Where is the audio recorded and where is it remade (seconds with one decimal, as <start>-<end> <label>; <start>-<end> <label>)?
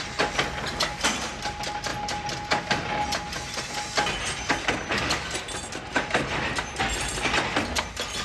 0.0-8.2 recorded